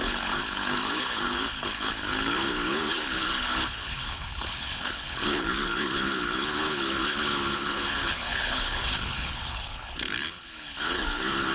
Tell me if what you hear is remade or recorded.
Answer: remade